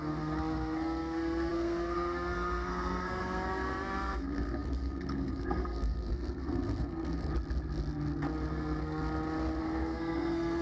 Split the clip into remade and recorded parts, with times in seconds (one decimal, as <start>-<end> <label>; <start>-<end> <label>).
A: 0.0-7.3 remade; 7.3-8.5 recorded; 8.5-9.0 remade; 9.0-9.6 recorded; 9.6-10.6 remade